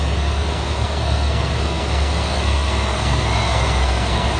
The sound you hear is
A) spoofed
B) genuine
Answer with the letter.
A